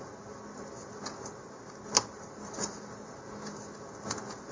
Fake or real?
real